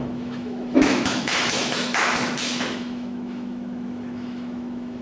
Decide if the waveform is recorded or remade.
remade